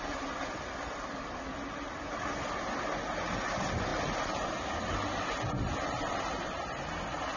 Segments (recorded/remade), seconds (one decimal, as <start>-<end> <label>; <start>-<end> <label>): 0.0-7.4 recorded